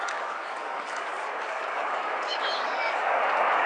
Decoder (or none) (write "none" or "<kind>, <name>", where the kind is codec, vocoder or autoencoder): codec, DAC